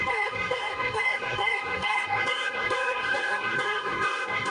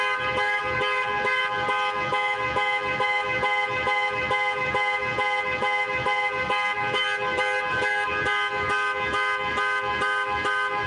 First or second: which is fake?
first